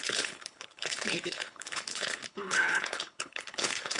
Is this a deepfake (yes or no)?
yes